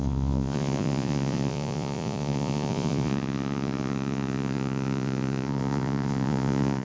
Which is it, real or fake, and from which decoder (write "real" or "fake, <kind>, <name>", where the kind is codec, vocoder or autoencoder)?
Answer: fake, vocoder, Vocos